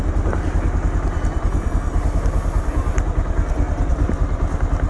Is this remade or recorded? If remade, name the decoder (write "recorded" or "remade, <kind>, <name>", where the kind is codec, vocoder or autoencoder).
recorded